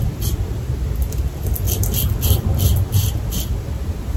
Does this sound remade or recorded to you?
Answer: recorded